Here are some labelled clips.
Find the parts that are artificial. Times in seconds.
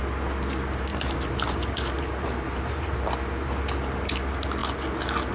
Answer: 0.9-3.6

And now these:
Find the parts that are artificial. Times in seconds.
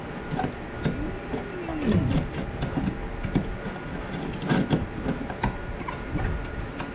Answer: none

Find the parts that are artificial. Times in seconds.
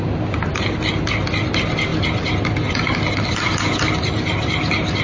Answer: none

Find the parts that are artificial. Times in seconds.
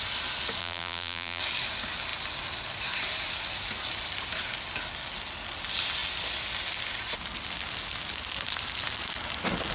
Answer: 0.6-1.4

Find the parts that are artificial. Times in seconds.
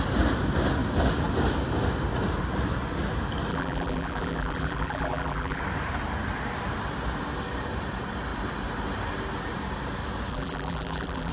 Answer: 3.5-5.6; 10.3-11.3